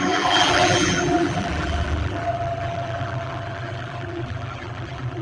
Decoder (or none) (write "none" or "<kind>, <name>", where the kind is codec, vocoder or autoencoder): vocoder, BigVGAN v2